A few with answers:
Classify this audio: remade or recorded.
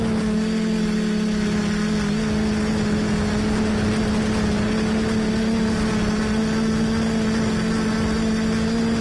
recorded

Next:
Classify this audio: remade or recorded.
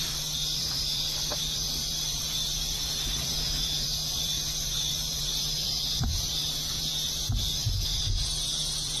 remade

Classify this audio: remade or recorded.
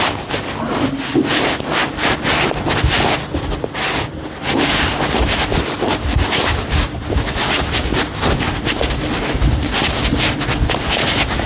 recorded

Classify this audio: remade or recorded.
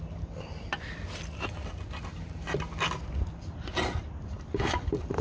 recorded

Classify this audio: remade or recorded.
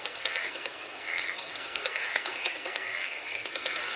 remade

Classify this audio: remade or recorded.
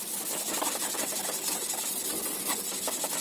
recorded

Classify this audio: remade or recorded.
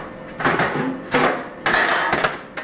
recorded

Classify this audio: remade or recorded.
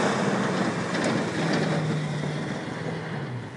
recorded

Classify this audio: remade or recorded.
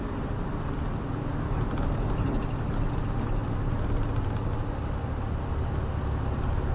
recorded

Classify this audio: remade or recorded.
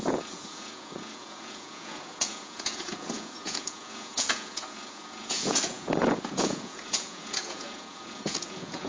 remade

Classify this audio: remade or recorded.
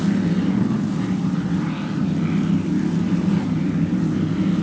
recorded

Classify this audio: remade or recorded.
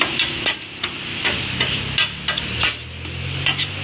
recorded